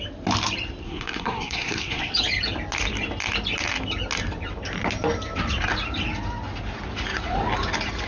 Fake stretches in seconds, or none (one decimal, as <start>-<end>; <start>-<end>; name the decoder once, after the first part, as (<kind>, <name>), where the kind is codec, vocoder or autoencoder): 0.8-2.1 (codec, SNAC)